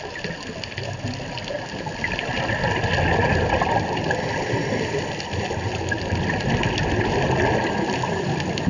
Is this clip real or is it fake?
real